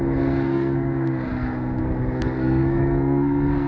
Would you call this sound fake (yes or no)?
yes